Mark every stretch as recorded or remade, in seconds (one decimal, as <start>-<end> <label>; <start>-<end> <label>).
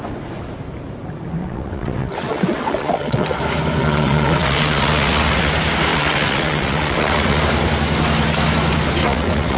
0.0-1.4 recorded; 1.4-3.4 remade; 3.4-3.8 recorded; 3.8-5.5 remade; 5.5-5.9 recorded; 5.9-7.4 remade; 7.4-9.0 recorded; 9.0-9.6 remade